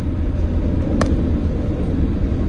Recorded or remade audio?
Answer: recorded